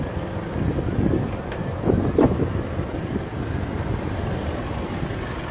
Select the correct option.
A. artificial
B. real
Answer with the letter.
B